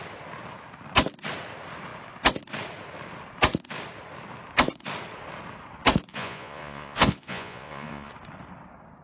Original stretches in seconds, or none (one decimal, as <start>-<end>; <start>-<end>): 0.0-6.1; 8.1-9.0